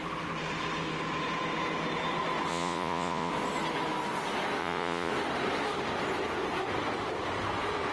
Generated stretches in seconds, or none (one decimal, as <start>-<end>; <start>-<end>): 2.5-3.3; 4.6-5.1